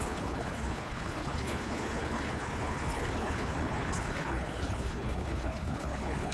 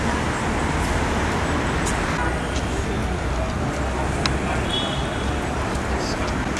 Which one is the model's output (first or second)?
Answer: first